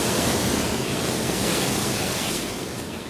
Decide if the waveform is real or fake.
fake